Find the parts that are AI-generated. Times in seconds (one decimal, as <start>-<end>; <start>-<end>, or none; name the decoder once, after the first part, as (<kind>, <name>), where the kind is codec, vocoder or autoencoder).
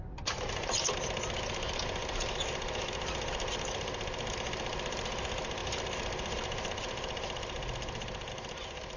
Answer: none